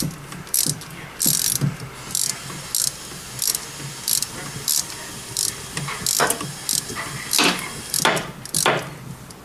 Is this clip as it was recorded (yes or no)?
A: yes